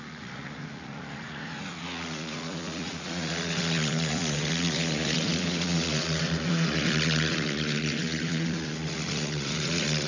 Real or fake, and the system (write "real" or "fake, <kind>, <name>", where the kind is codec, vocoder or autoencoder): fake, vocoder, Vocos